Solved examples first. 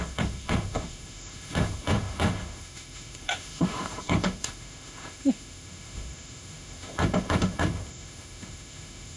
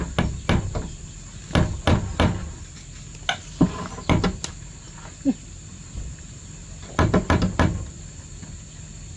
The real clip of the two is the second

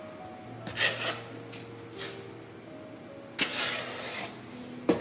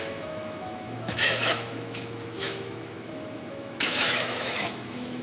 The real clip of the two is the first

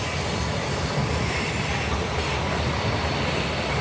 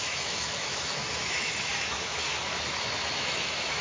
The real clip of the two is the first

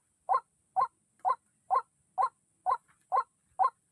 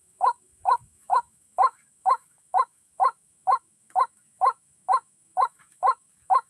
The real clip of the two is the first